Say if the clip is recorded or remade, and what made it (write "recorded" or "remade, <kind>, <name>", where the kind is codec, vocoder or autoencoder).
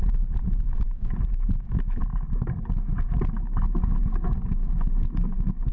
recorded